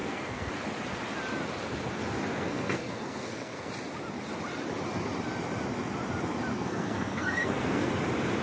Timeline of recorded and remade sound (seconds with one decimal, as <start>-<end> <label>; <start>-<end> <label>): 0.0-0.5 remade; 0.5-2.3 recorded; 2.3-3.7 remade; 3.7-6.5 recorded; 6.5-7.9 remade; 7.9-8.4 recorded